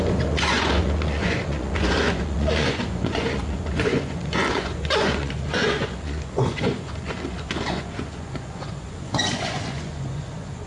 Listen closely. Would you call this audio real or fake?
fake